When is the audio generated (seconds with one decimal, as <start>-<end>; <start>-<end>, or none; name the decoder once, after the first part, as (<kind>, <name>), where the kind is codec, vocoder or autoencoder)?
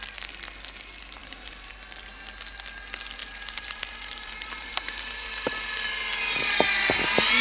1.2-1.7 (vocoder, BigVGAN v2); 3.2-5.6